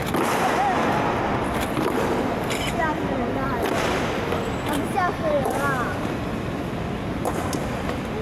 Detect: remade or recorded recorded